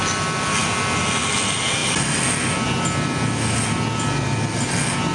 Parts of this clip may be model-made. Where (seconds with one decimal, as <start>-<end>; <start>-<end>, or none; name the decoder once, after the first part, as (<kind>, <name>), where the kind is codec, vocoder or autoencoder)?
none